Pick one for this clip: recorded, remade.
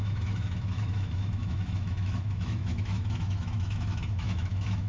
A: remade